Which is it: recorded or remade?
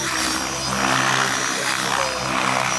recorded